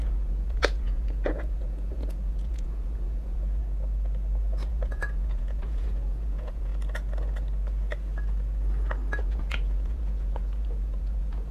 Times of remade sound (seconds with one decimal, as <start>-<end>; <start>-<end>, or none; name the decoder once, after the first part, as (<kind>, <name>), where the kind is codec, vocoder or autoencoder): 0.0-3.6 (vocoder, Vocos); 4.7-6.7; 9.2-11.5